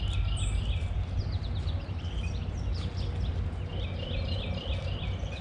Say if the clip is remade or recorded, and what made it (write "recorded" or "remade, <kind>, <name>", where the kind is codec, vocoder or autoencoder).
recorded